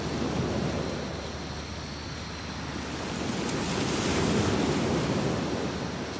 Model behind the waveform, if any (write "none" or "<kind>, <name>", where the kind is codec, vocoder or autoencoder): none